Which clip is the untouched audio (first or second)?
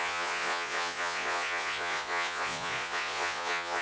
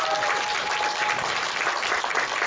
second